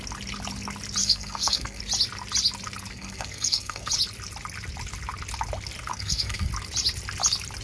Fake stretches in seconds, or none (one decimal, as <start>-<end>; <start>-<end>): 1.0-1.8; 2.9-3.9; 5.9-6.5